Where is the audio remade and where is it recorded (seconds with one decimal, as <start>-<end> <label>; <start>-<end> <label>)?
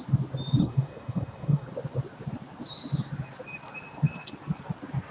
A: 0.0-0.6 recorded; 0.6-1.7 remade; 1.7-5.1 recorded